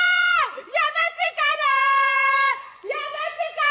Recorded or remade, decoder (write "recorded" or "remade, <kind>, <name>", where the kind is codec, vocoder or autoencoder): remade, vocoder, Vocos